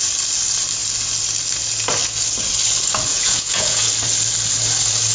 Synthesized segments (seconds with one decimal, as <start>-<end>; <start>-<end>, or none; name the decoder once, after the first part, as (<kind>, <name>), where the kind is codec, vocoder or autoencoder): 3.1-3.9 (vocoder, Vocos)